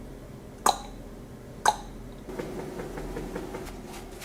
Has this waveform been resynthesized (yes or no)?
no